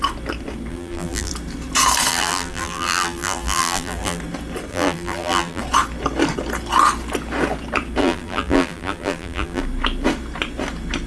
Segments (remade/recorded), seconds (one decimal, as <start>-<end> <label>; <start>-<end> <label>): 0.0-0.7 recorded; 0.7-1.3 remade; 1.3-2.1 recorded; 2.1-4.2 remade; 4.2-4.7 recorded; 4.7-5.6 remade; 5.6-8.0 recorded; 8.0-9.6 remade; 9.6-11.1 recorded

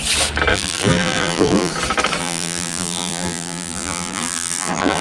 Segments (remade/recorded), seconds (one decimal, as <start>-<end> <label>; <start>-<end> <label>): 0.0-0.5 recorded; 0.5-1.7 remade; 1.7-2.2 recorded; 2.2-5.0 remade

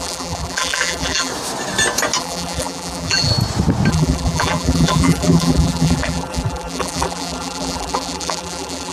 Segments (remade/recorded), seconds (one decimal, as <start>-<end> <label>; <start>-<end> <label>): 0.0-1.3 remade; 1.3-2.2 recorded; 2.2-3.3 remade; 3.3-3.9 recorded; 3.9-8.9 remade

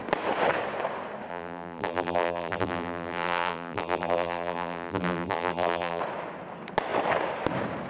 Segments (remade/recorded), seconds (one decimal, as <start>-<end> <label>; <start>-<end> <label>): 0.0-1.3 recorded; 1.3-6.0 remade; 6.0-7.9 recorded

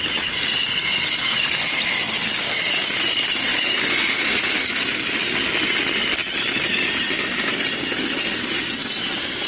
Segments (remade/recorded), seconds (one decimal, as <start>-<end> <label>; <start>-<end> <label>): 0.0-8.8 recorded; 8.8-9.5 remade